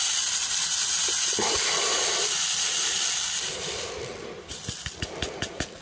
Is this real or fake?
real